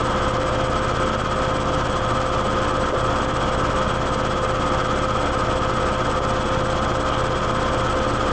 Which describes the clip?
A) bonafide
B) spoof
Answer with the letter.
A